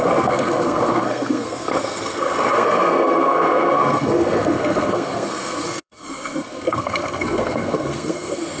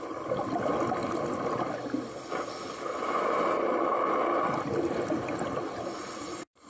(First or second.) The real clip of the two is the second